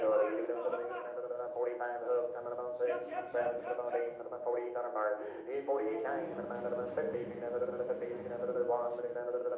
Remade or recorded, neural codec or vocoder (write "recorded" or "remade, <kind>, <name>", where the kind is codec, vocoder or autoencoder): remade, autoencoder, DAC-VAE